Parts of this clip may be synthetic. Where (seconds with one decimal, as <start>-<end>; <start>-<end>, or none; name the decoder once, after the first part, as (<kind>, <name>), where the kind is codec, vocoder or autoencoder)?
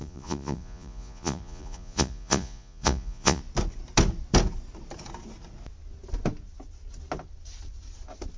0.0-3.4 (vocoder, Vocos)